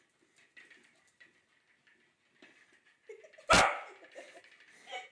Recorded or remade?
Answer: recorded